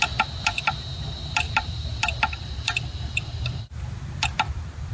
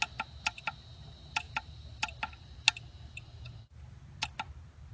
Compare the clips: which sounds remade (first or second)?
first